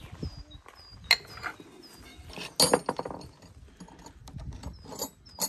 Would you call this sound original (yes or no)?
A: yes